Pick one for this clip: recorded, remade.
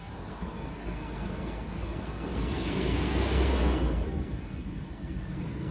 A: remade